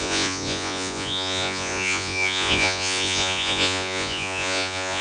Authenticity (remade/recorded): remade